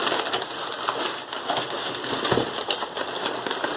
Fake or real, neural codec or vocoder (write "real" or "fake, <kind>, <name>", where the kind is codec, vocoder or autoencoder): real